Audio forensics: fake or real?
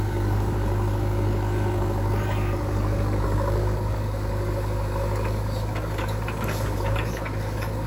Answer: fake